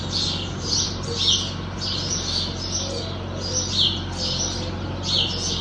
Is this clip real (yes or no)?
yes